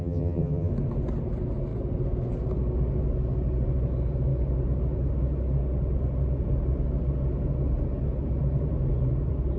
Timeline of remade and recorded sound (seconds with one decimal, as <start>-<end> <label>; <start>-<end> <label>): 0.0-0.7 remade; 0.7-9.6 recorded